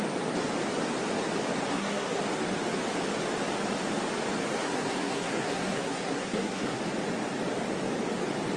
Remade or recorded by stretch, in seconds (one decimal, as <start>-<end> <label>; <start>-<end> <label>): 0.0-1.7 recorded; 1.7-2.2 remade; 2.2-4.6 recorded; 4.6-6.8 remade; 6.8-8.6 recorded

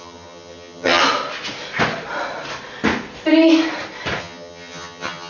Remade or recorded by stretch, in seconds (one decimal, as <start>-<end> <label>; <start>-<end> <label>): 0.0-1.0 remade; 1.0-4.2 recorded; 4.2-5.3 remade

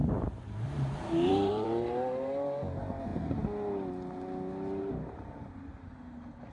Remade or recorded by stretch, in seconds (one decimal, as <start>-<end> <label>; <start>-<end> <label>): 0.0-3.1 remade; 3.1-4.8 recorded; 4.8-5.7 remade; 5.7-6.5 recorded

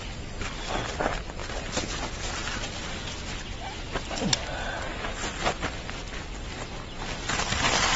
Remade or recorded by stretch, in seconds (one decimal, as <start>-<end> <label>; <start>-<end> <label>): 0.0-8.0 recorded

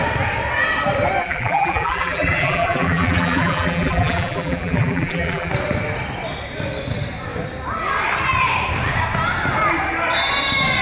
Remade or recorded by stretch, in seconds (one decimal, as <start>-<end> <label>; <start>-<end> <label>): 0.0-1.2 recorded; 1.2-5.5 remade; 5.5-10.8 recorded

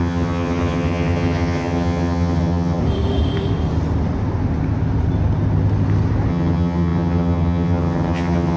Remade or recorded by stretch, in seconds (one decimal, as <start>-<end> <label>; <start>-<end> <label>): 0.0-2.8 remade; 2.8-6.3 recorded; 6.3-8.6 remade

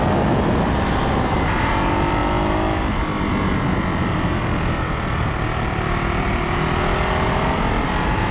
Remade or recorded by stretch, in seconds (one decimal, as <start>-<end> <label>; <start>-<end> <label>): 0.0-8.3 recorded